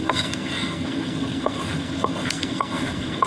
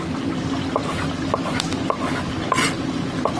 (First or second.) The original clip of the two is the second